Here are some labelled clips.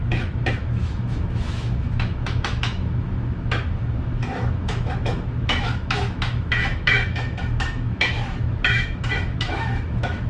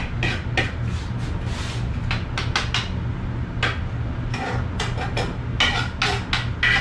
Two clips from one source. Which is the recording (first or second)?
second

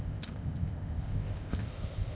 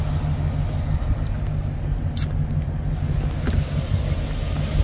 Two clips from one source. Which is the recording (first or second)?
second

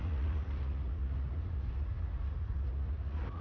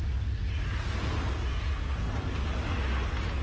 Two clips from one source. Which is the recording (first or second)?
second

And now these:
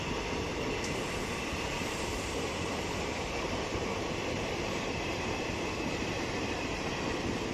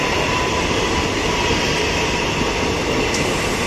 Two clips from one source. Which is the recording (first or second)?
second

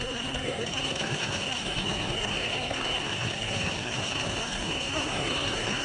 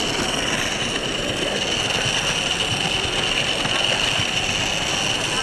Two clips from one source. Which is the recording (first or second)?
second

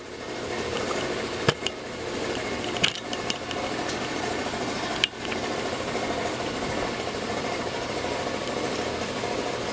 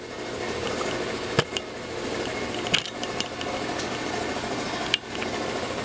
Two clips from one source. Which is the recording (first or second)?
second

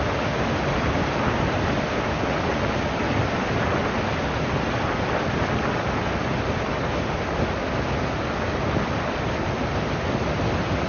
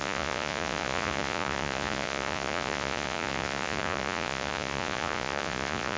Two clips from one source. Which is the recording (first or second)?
first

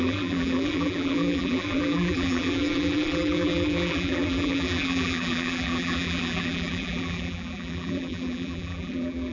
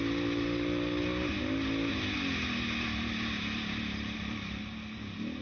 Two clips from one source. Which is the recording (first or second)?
second